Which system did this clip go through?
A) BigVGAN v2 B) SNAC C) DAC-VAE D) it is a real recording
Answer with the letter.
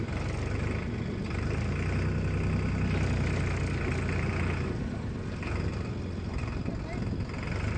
D